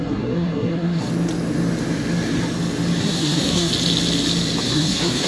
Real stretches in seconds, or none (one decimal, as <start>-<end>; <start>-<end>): 1.1-3.0; 3.7-4.6